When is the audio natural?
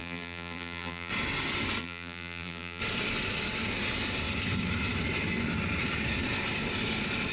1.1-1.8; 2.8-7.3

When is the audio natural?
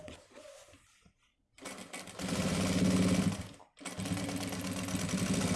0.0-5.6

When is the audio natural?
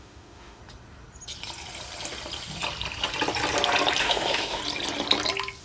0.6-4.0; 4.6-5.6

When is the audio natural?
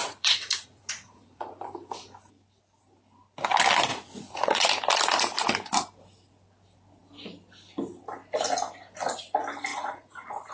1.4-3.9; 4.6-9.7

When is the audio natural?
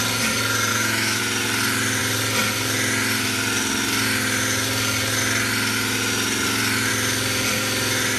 0.0-0.7; 1.2-8.2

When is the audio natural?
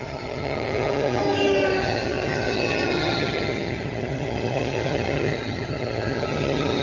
1.2-1.8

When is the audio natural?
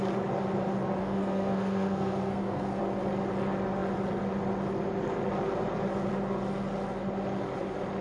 0.0-1.0; 2.8-8.0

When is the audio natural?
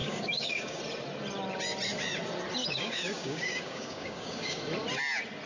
0.8-2.6; 4.6-5.5